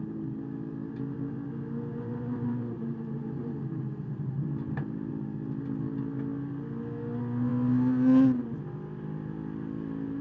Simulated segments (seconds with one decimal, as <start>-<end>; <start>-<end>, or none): 1.9-5.1